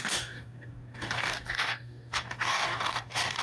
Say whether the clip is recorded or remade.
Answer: remade